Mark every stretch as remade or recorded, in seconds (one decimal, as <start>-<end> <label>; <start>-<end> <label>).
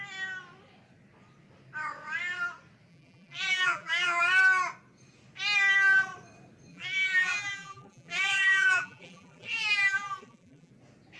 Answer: 0.0-2.9 recorded; 2.9-4.2 remade; 4.2-6.7 recorded; 6.7-10.7 remade; 10.7-11.2 recorded